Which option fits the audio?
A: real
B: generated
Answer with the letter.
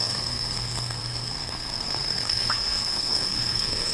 B